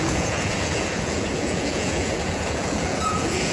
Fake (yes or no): yes